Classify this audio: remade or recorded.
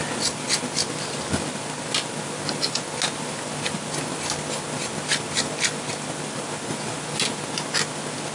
recorded